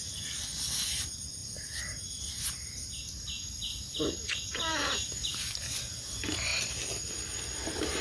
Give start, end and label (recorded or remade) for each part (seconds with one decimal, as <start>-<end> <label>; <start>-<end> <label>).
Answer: 0.0-8.0 recorded